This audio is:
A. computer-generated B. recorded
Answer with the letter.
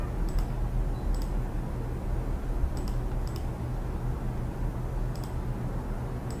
B